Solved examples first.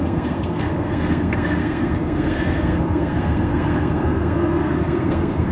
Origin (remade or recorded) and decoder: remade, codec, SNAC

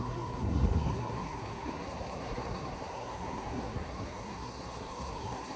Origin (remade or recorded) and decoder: remade, codec, SNAC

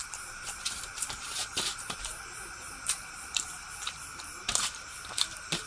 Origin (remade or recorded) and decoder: remade, vocoder, BigVGAN v2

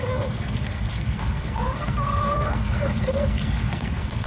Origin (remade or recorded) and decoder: remade, codec, SNAC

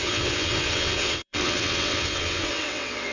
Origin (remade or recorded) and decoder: remade, vocoder, WaveNeXt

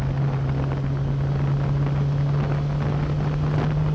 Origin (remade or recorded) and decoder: recorded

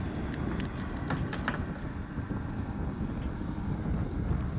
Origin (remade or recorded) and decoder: recorded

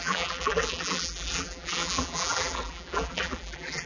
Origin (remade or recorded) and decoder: remade, vocoder, BigVGAN v2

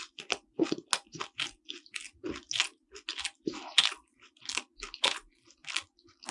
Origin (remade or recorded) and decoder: recorded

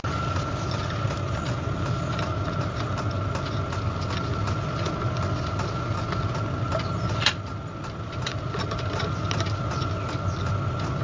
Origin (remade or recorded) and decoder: recorded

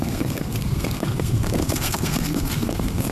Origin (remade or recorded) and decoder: remade, codec, SNAC